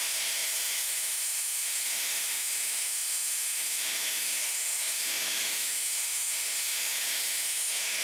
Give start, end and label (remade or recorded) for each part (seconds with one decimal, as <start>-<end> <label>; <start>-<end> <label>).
0.0-8.0 remade